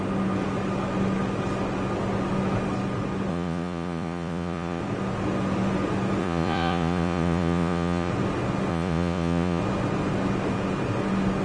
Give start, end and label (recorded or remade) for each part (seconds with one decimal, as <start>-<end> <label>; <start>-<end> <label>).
0.0-3.3 recorded; 3.3-4.8 remade; 4.8-6.2 recorded; 6.2-8.1 remade; 8.1-8.7 recorded; 8.7-9.6 remade; 9.6-11.4 recorded

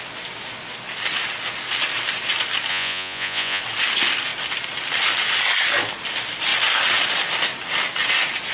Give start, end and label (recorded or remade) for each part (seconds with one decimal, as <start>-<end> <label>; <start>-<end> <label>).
0.0-2.7 recorded; 2.7-3.6 remade; 3.6-8.5 recorded